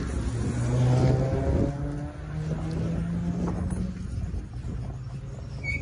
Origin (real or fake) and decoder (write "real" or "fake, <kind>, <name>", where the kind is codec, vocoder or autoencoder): real